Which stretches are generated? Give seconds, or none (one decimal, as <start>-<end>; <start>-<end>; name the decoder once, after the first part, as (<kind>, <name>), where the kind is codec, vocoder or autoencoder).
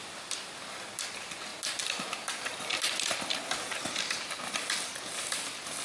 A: none